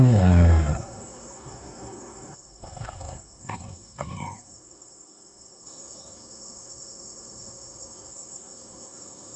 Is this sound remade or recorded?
remade